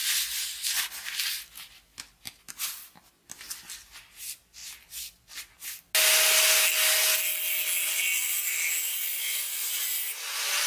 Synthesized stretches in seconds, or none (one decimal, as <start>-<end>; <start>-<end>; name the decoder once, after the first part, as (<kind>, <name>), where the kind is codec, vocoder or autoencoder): 9.1-9.7 (vocoder, BigVGAN v2)